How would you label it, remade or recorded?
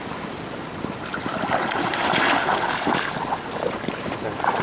recorded